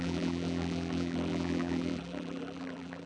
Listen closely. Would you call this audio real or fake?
fake